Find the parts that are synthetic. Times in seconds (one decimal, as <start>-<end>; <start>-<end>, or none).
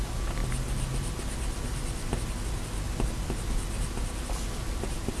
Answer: none